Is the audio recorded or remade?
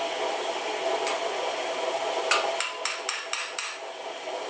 recorded